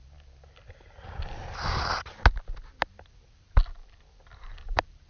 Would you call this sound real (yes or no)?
yes